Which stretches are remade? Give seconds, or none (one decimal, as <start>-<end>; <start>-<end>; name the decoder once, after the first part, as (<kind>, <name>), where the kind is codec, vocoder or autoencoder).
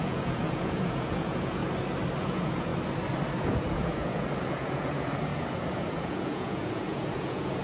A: 0.0-1.6 (vocoder, Vocos); 2.2-2.7; 3.4-7.6